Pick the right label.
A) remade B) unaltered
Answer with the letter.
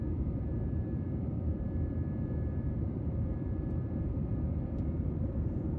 A